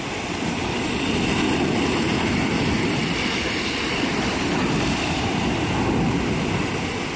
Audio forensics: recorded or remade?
remade